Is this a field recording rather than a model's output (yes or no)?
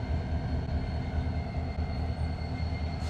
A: yes